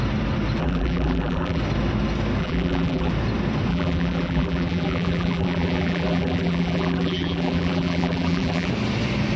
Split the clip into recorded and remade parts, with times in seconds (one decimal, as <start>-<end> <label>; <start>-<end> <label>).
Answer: 0.0-0.6 recorded; 0.6-1.6 remade; 1.6-2.4 recorded; 2.4-3.1 remade; 3.1-3.7 recorded; 3.7-8.7 remade; 8.7-9.4 recorded